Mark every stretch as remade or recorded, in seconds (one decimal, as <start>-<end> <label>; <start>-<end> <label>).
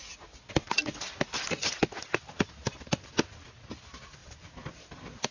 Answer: 0.0-2.0 recorded; 2.0-2.7 remade; 2.7-4.2 recorded; 4.2-5.3 remade